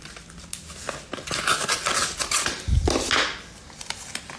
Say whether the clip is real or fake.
real